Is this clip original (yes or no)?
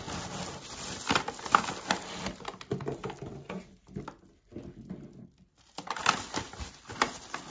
yes